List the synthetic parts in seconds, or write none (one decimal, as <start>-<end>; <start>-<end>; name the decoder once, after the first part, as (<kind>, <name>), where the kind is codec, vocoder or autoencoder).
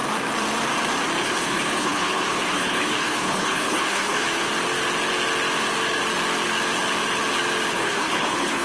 1.2-4.5 (codec, HILCodec); 7.7-8.6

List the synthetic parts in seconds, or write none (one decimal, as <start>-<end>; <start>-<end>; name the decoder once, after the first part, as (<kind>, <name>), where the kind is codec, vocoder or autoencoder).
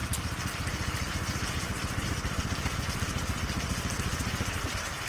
none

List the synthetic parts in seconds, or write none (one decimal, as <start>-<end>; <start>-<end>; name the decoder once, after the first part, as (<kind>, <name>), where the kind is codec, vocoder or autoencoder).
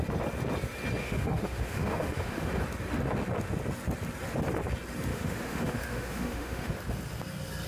1.0-2.6 (autoencoder, DAC-VAE); 5.1-6.7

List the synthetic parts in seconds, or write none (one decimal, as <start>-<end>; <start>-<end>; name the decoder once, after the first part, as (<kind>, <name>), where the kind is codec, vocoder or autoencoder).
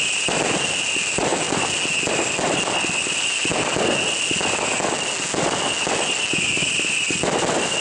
none